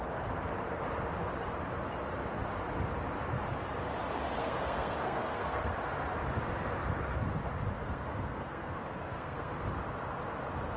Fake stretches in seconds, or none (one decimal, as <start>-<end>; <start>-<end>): 4.4-5.7; 7.8-9.7